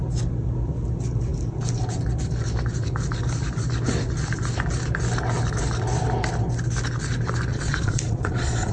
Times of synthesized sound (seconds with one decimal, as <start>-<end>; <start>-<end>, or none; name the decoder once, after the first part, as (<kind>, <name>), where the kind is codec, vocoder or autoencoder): 7.5-8.7 (vocoder, Vocos)